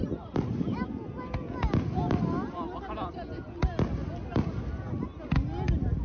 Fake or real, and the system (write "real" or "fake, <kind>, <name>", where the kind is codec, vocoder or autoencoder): real